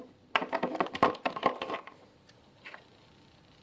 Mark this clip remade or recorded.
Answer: recorded